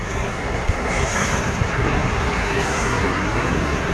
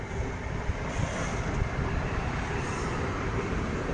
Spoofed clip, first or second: first